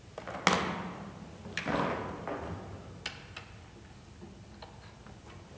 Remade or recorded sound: recorded